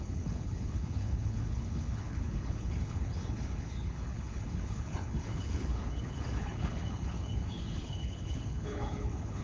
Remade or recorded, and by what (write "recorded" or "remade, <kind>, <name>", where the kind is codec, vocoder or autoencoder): remade, codec, HILCodec